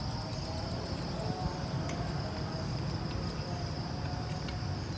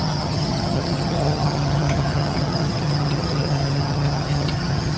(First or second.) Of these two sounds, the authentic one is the first